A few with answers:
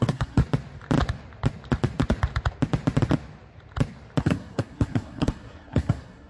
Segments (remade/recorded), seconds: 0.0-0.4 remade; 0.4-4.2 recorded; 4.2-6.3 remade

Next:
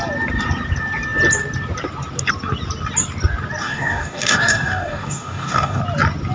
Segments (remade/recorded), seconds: 0.0-3.6 recorded; 3.6-5.8 remade; 5.8-6.3 recorded

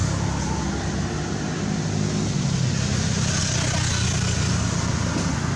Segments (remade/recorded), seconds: 0.0-5.6 recorded

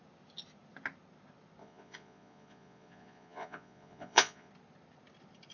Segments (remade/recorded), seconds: 0.0-1.6 recorded; 1.6-4.5 remade; 4.5-5.5 recorded